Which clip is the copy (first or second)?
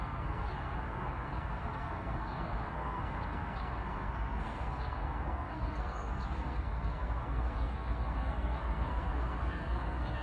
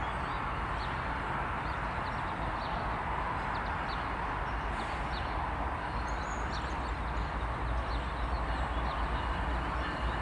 first